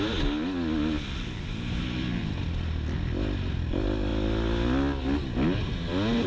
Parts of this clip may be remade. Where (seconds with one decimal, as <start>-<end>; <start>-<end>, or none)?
none